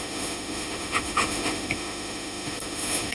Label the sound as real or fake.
fake